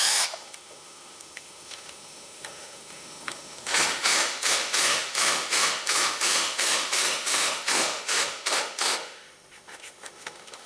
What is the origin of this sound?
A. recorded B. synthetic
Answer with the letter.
B